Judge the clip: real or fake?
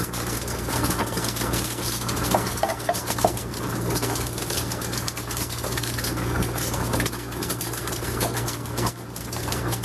fake